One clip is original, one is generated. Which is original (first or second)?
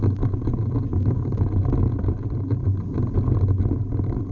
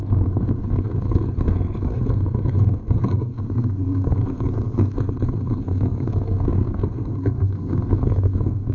first